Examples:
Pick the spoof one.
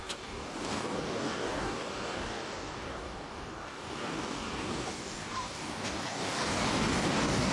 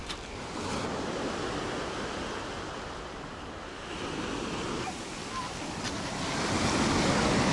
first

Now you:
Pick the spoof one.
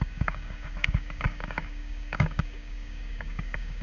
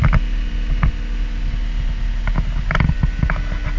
first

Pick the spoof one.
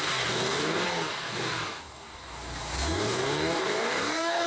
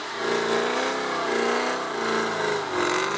first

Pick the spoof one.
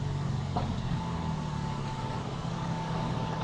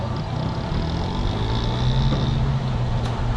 first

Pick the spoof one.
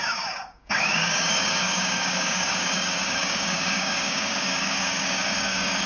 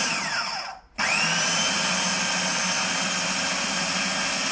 first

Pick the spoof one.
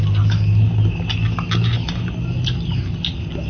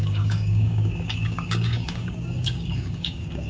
second